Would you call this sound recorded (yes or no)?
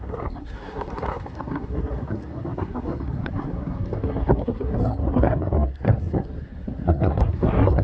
no